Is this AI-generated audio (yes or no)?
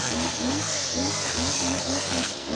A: yes